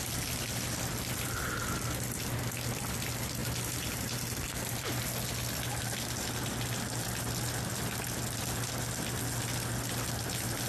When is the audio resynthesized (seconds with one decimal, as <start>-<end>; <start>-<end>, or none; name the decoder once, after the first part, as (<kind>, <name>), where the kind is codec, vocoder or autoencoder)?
none